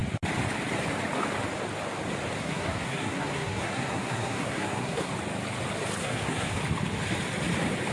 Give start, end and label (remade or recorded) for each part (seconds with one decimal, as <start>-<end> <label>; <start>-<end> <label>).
0.0-2.4 recorded; 2.4-5.1 remade; 5.1-6.0 recorded; 6.0-6.6 remade; 6.6-7.9 recorded